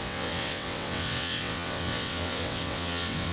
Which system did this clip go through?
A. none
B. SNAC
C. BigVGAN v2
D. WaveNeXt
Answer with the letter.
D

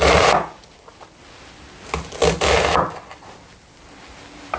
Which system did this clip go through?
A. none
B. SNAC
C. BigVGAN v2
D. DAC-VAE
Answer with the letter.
A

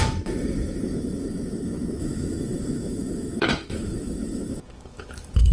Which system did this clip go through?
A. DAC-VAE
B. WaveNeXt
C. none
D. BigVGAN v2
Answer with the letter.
A